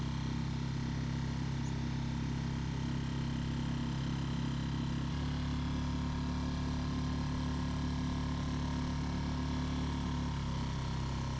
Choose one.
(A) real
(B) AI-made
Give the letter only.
A